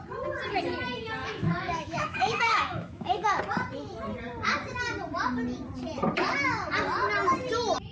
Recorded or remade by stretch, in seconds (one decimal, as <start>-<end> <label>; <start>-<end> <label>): 0.0-1.2 recorded; 1.2-3.4 remade; 3.4-7.9 recorded